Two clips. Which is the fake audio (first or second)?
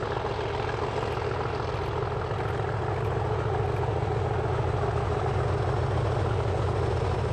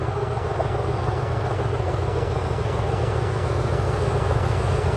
second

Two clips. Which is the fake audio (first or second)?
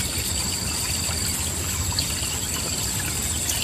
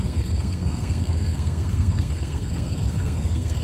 second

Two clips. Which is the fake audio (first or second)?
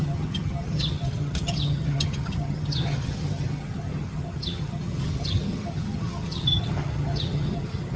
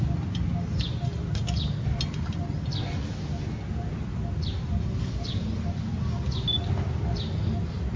first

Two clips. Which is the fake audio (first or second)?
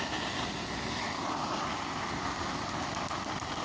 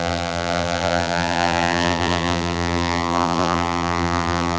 second